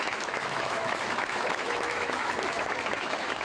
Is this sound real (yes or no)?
no